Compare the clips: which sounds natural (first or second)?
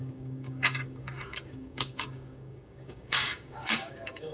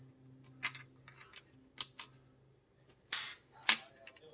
second